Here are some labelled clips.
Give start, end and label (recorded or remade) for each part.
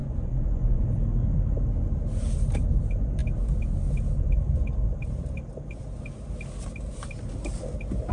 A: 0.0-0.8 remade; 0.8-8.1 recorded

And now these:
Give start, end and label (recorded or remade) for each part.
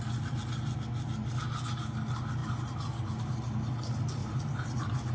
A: 0.0-4.2 recorded; 4.2-5.1 remade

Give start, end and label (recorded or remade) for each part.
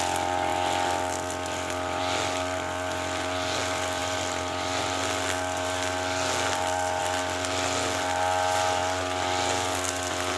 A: 0.0-10.4 recorded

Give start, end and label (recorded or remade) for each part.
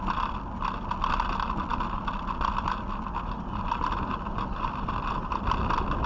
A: 0.0-6.1 recorded